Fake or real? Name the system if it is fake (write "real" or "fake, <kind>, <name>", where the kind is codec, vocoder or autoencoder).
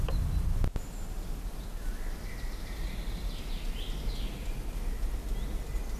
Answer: real